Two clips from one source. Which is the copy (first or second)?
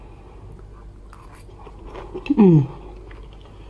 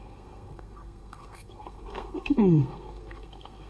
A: second